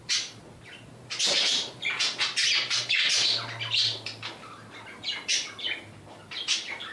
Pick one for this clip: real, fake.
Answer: fake